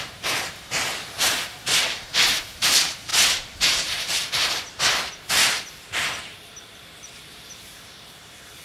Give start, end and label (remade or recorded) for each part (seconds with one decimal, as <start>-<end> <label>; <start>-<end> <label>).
0.0-8.6 remade